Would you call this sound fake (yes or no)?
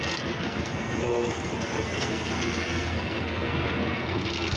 yes